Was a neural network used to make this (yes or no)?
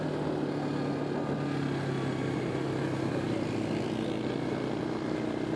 no